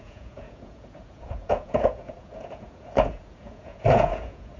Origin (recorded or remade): remade